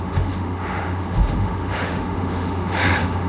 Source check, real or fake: fake